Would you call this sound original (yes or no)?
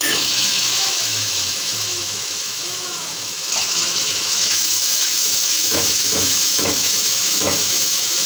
no